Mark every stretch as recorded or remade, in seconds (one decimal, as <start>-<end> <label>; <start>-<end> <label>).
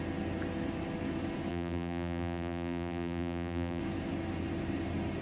0.0-1.5 recorded; 1.5-3.8 remade; 3.8-5.2 recorded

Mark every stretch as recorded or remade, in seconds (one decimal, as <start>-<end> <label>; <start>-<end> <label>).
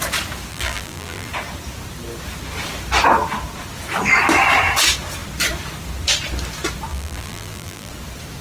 0.0-0.5 recorded; 0.5-1.3 remade; 1.3-6.9 recorded; 6.9-7.9 remade; 7.9-8.4 recorded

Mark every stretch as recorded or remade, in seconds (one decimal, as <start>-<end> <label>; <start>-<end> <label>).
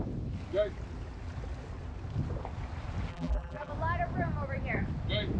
0.0-3.1 recorded; 3.1-3.7 remade; 3.7-5.4 recorded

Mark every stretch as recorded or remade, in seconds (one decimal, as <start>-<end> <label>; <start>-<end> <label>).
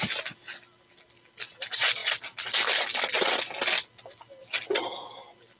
0.0-2.0 remade; 2.0-4.9 recorded; 4.9-5.6 remade